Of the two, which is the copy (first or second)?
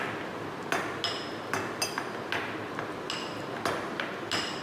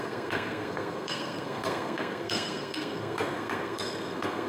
second